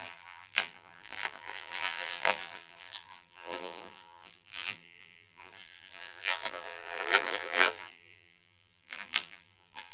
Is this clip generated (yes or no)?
yes